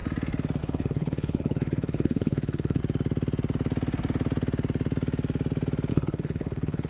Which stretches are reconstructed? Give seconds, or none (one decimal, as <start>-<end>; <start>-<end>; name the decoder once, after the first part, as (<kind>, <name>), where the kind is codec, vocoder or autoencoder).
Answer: 0.6-2.8 (codec, HILCodec); 5.9-6.9